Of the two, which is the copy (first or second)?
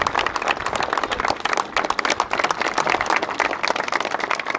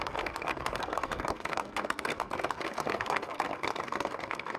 second